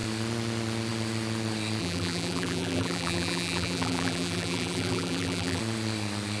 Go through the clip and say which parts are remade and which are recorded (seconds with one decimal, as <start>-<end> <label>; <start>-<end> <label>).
0.0-1.8 recorded; 1.8-5.6 remade; 5.6-6.4 recorded